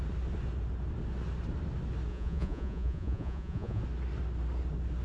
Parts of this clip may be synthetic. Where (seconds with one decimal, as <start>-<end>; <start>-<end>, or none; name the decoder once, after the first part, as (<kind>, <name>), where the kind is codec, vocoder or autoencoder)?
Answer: 2.1-3.8 (vocoder, Vocos)